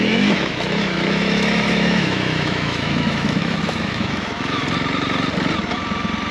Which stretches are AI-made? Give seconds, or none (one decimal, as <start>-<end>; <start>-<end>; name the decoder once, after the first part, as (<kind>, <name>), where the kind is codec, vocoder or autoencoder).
0.0-4.6 (autoencoder, DAC-VAE)